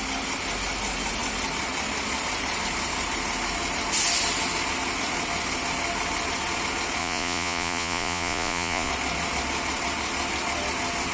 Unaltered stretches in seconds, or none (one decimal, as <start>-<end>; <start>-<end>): 0.0-7.0; 8.9-11.1